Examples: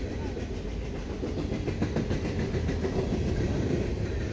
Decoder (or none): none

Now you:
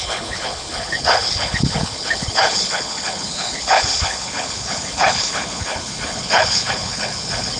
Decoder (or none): codec, HILCodec